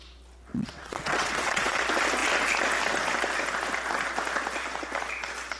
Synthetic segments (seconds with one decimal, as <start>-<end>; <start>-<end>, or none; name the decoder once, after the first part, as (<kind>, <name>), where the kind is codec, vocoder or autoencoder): 0.5-1.8 (vocoder, WaveNeXt)